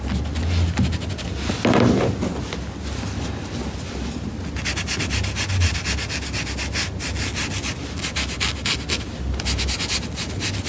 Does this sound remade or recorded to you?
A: recorded